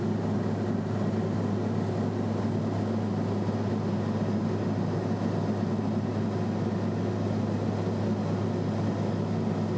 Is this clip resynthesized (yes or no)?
no